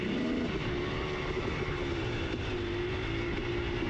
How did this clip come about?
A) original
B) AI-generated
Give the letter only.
A